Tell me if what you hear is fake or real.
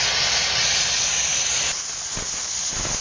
real